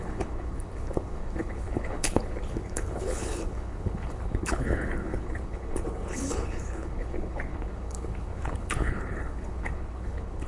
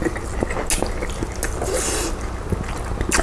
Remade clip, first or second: first